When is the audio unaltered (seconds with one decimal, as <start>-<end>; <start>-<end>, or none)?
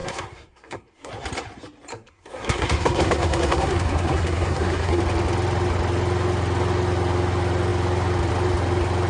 1.1-1.9; 5.0-9.1